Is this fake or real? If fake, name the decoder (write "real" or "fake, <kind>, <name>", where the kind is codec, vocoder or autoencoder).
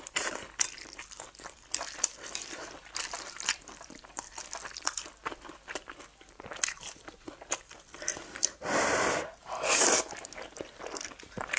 fake, vocoder, BigVGAN v2